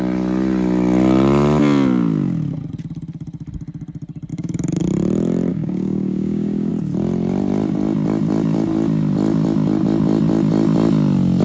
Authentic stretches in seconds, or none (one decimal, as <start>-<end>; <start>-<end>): 0.0-4.3; 4.8-5.5; 6.7-11.4